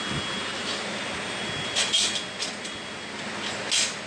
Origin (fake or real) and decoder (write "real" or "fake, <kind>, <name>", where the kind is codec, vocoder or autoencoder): real